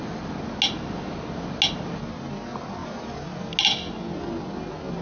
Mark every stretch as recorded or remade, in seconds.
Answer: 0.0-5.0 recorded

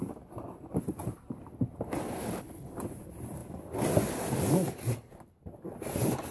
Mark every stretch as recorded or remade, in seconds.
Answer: 0.0-2.2 recorded; 2.2-2.7 remade; 2.7-6.3 recorded

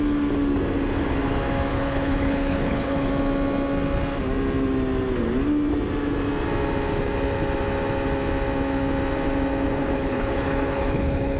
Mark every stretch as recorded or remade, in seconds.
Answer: 0.0-1.7 recorded; 1.7-3.1 remade; 3.1-9.8 recorded; 9.8-11.4 remade

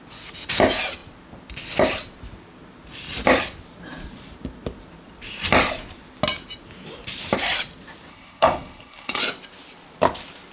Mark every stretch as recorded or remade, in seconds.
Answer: 0.0-8.1 recorded; 8.1-9.2 remade; 9.2-10.5 recorded